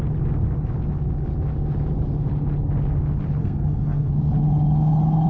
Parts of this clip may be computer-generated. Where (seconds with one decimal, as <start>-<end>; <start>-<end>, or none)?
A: 3.4-4.1